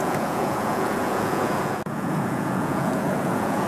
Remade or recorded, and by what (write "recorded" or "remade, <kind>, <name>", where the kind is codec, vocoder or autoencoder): remade, vocoder, Vocos